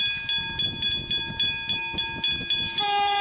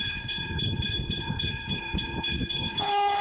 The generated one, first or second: second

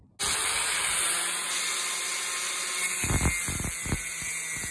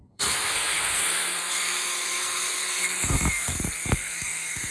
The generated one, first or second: second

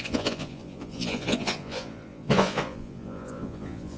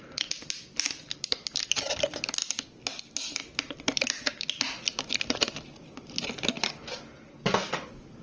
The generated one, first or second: first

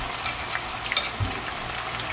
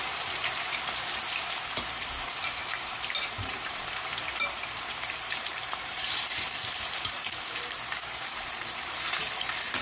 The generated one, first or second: second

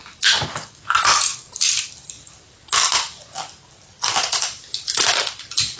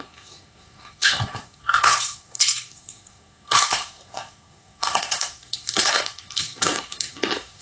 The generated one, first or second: second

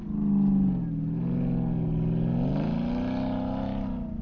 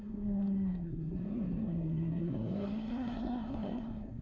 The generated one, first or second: second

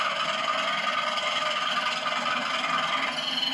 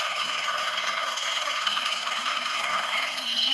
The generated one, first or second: second